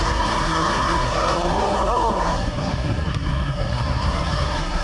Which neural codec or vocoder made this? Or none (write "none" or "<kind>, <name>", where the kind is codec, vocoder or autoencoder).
codec, SNAC